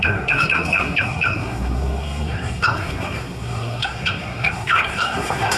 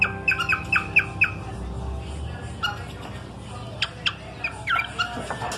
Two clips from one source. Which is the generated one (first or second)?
first